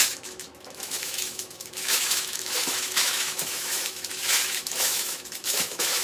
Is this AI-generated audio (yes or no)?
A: yes